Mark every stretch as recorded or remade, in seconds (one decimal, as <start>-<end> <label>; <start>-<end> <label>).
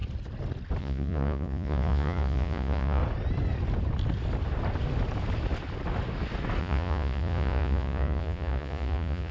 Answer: 0.0-0.8 recorded; 0.8-3.0 remade; 3.0-6.6 recorded; 6.6-9.3 remade